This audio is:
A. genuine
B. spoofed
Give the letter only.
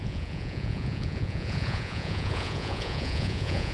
B